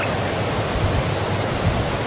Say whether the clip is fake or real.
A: real